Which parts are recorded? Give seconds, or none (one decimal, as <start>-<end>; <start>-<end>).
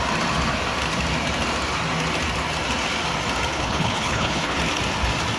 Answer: 0.0-3.5; 4.6-5.4